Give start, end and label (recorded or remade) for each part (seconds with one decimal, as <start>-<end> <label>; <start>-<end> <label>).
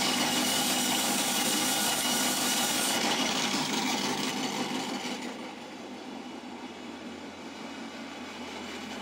0.0-4.3 remade; 4.3-9.0 recorded